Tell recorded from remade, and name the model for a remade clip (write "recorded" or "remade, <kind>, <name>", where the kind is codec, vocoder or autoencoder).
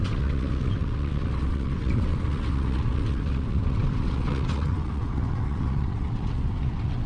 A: remade, vocoder, WaveNeXt